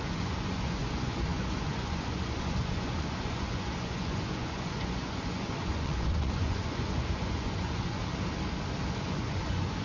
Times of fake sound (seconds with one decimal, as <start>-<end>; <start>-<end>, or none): 0.0-8.0; 8.9-9.8